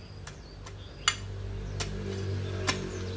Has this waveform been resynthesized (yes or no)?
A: no